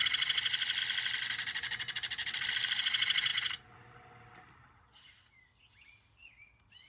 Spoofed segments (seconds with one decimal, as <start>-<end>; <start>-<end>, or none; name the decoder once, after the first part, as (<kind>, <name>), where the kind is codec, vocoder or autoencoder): 2.2-2.8 (vocoder, BigVGAN v2)